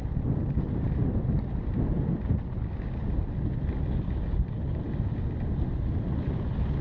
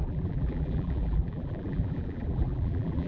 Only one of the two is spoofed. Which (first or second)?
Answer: second